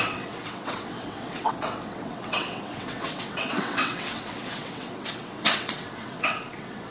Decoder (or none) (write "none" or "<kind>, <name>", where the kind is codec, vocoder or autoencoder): vocoder, WaveNeXt